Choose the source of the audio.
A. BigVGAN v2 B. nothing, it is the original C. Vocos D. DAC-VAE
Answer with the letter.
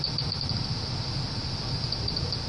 A